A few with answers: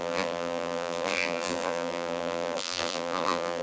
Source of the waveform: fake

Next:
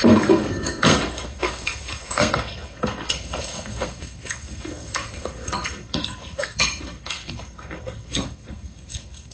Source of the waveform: fake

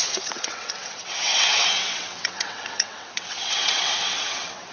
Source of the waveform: fake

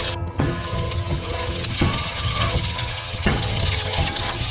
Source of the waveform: fake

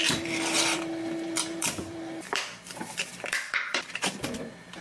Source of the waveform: fake